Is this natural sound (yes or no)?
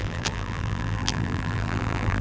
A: no